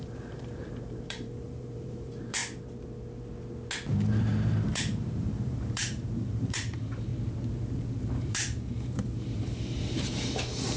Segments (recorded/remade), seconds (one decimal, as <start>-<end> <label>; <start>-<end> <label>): 0.0-2.4 remade; 2.4-3.9 recorded; 3.9-7.1 remade; 7.1-8.0 recorded; 8.0-10.8 remade